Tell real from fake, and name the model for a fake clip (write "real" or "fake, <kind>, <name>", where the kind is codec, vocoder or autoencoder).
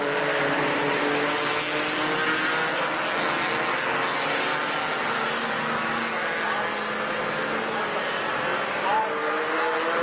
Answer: real